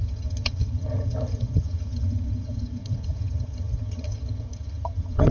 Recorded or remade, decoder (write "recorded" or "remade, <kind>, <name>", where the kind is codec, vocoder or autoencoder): remade, vocoder, HiFi-GAN